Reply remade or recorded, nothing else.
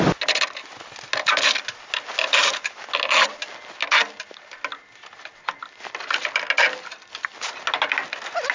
recorded